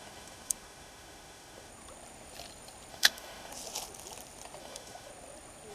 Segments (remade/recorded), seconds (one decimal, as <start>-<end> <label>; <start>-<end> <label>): 0.0-1.7 remade; 1.7-2.9 recorded; 2.9-3.5 remade; 3.5-4.6 recorded; 4.6-5.1 remade; 5.1-5.7 recorded